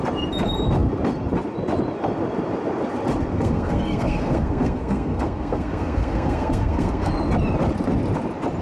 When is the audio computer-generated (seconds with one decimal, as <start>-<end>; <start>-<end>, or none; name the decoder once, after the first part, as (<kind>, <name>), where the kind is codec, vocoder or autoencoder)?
3.3-7.1 (codec, SNAC)